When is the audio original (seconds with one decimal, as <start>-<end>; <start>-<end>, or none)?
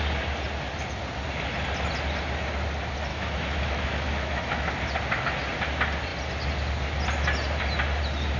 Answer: 0.0-3.1; 4.7-8.4